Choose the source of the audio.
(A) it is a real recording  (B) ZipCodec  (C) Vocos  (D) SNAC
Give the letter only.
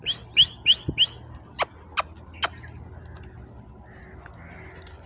A